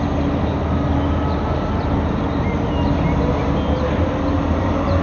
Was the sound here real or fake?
real